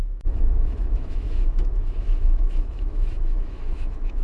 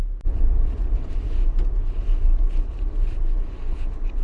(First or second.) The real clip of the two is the second